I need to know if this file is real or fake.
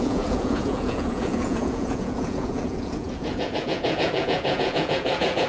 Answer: fake